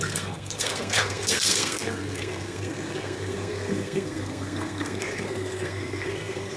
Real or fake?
fake